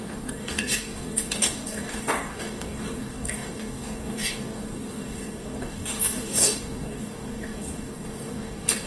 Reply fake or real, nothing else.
fake